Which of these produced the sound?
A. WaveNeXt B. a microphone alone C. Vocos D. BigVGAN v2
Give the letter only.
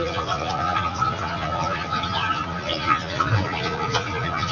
C